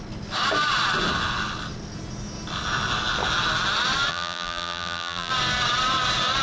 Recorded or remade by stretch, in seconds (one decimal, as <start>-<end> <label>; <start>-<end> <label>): 0.0-4.1 recorded; 4.1-5.3 remade; 5.3-6.4 recorded